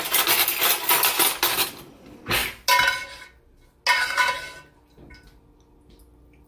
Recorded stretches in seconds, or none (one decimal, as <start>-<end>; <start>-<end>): 0.0-6.5